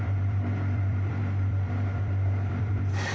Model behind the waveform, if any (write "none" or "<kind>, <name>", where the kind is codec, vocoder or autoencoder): vocoder, BigVGAN v2